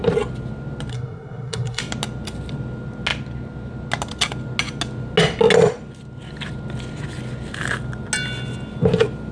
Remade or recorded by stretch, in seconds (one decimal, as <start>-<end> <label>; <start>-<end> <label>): 0.0-0.9 recorded; 0.9-1.8 remade; 1.8-9.3 recorded

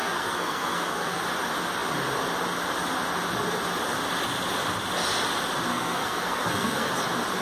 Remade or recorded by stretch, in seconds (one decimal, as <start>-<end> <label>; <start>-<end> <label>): 0.0-1.2 remade; 1.2-5.7 recorded; 5.7-6.9 remade; 6.9-7.4 recorded

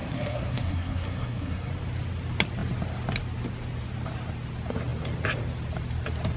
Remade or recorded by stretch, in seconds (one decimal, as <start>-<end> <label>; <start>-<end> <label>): 0.0-1.7 remade; 1.7-6.4 recorded

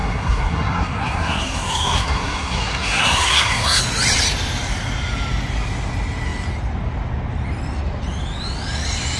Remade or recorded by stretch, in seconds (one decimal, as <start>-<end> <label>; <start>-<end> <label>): 0.0-3.8 remade; 3.8-9.2 recorded